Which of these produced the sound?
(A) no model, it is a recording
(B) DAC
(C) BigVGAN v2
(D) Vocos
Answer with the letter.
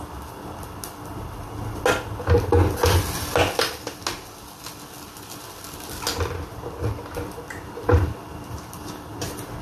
A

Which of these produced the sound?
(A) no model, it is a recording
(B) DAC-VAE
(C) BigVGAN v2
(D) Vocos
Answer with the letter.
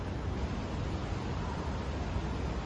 A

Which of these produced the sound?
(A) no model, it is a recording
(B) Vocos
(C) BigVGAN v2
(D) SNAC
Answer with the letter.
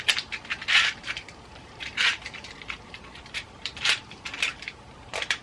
C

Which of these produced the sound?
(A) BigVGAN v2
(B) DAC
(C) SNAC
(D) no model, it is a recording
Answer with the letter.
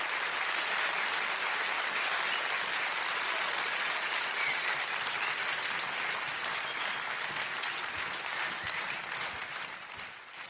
D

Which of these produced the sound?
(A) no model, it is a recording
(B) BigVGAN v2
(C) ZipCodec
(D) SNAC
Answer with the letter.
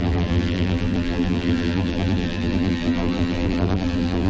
B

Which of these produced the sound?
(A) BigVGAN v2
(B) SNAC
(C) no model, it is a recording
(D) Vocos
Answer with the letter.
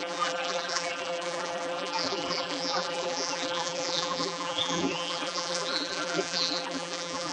A